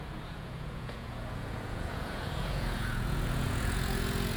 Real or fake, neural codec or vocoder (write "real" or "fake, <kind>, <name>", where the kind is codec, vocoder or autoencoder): fake, vocoder, Vocos